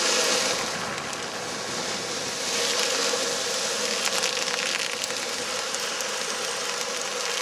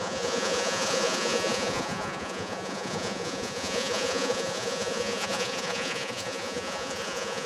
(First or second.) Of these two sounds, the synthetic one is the second